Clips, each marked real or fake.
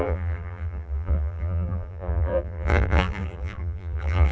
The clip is fake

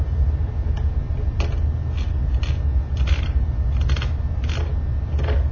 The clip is real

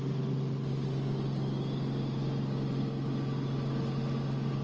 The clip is real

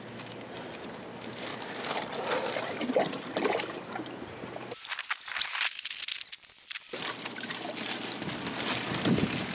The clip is real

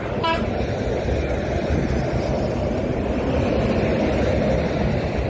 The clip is real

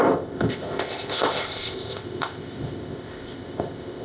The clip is fake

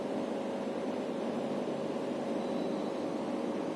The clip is real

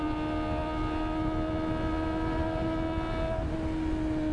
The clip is real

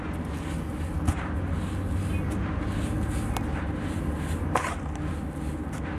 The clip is real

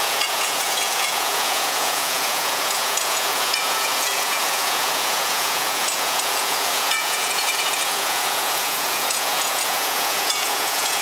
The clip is fake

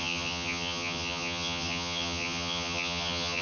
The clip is fake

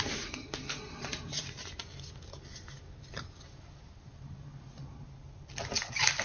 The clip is real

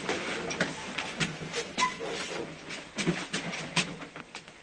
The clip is fake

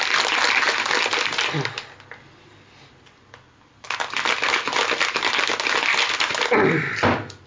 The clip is real